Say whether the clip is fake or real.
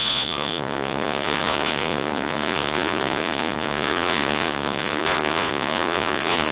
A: fake